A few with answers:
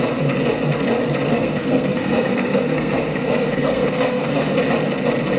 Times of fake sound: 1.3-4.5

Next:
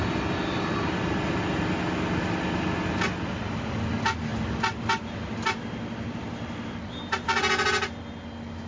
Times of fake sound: none

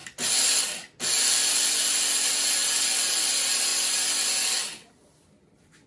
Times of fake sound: none

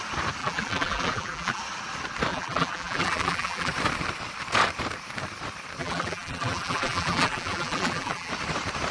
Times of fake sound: 0.4-1.6; 2.3-3.7; 5.8-8.3

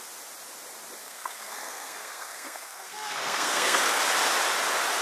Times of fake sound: 1.0-4.0

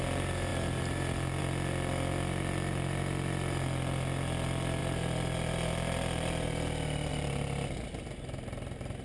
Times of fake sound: none

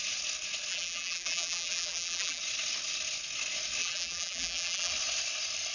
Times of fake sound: 0.7-2.4; 3.8-4.9

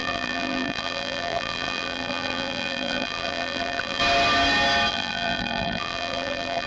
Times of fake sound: 0.0-4.0; 4.9-6.7